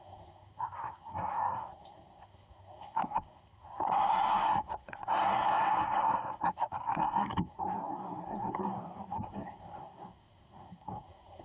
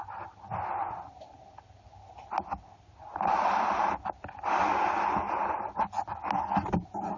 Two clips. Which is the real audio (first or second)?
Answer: second